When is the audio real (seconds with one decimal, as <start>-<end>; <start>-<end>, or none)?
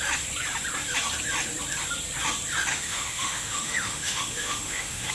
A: 0.0-2.7